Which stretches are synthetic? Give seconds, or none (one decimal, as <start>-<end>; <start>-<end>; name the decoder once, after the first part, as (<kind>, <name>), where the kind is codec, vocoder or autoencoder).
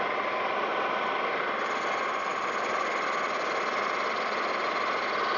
none